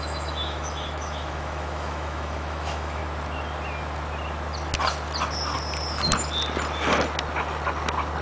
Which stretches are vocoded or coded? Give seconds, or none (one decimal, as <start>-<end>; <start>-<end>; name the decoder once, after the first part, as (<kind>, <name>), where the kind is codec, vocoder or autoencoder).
0.0-3.0 (autoencoder, DAC-VAE)